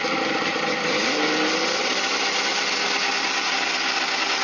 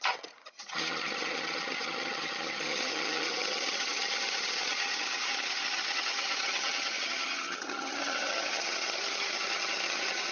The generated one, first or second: second